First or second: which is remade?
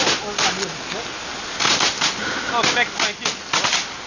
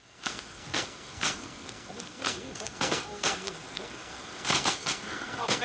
second